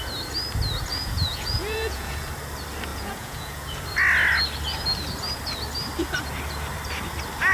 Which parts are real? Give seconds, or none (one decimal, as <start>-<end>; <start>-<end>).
0.0-0.9; 2.3-2.9; 3.8-7.5